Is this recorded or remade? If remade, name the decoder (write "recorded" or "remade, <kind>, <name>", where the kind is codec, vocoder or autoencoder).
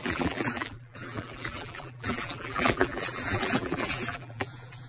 remade, vocoder, BigVGAN v2